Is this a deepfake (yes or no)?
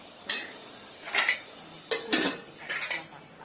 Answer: no